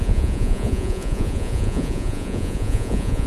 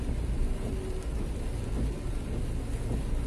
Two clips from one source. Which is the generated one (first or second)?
first